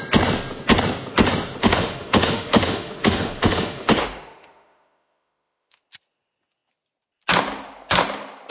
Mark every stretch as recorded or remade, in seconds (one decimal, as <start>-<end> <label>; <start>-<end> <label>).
0.0-1.6 recorded; 1.6-5.8 remade; 5.8-8.5 recorded